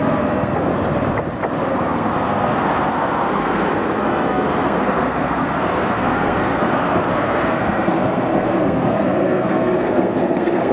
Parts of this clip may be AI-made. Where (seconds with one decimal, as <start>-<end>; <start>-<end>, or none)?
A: 0.0-0.7; 1.7-10.7